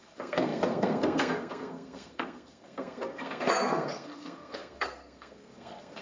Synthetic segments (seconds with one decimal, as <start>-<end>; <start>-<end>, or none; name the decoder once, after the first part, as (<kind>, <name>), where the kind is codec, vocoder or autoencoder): 0.0-6.0 (codec, SNAC)